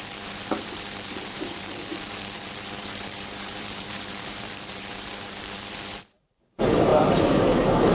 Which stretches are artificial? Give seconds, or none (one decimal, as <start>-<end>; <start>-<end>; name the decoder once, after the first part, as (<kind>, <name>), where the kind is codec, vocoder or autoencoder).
0.0-7.9 (vocoder, BigVGAN v2)